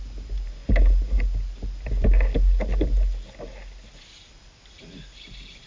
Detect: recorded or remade recorded